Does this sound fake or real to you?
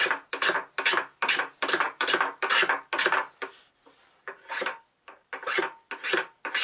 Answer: real